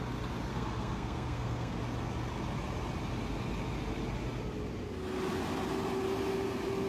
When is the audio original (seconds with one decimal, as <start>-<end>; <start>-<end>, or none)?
0.0-0.5; 1.8-6.9